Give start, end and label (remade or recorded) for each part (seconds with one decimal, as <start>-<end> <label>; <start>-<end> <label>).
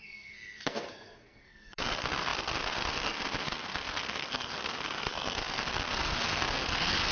0.0-7.1 remade